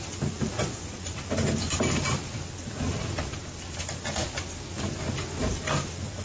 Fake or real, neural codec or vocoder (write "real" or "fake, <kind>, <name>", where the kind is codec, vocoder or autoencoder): real